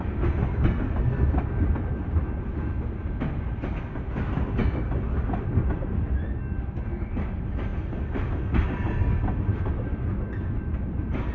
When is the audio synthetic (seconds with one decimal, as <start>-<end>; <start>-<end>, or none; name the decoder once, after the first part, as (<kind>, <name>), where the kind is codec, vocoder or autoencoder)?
none